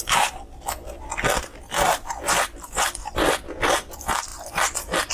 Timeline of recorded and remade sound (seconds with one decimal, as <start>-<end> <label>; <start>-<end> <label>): 0.0-5.1 recorded